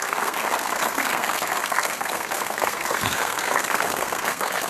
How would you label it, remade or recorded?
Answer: remade